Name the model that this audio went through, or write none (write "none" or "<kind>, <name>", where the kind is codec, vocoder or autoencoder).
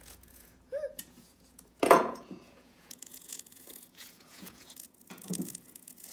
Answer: vocoder, Vocos